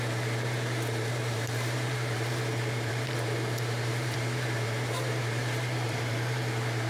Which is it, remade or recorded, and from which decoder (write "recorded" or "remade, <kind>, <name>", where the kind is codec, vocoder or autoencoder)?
remade, vocoder, BigVGAN v2